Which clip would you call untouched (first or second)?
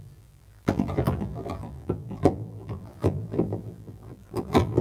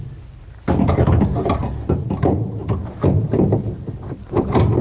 second